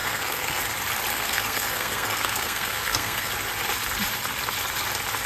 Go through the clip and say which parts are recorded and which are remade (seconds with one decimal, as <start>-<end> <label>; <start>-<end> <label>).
0.0-0.6 remade; 0.6-1.1 recorded; 1.1-3.3 remade; 3.3-5.3 recorded